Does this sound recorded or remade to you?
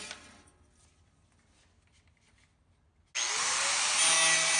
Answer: recorded